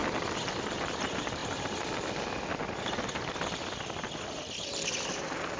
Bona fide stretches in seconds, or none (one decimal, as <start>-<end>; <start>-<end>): 0.0-0.6